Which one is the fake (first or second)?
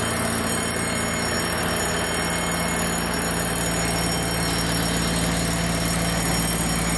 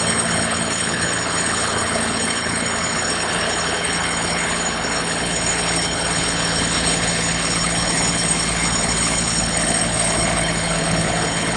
second